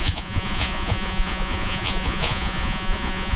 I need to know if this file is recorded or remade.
remade